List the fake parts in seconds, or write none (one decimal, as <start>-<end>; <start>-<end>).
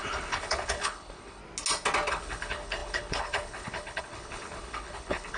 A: 0.0-1.4; 2.1-5.4